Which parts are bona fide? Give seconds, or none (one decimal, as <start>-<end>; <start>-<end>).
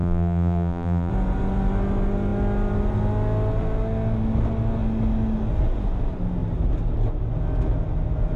1.1-8.4